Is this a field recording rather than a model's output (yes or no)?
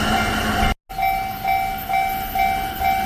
yes